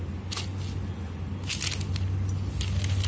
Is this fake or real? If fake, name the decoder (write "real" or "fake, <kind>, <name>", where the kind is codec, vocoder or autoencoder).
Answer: real